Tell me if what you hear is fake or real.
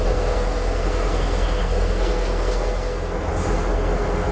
fake